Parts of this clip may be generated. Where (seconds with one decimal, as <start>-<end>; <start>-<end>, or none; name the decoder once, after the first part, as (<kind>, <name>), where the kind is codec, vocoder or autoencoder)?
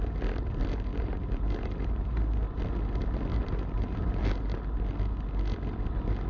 0.9-2.6 (vocoder, BigVGAN v2); 3.3-4.3